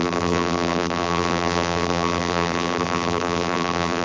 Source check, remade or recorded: remade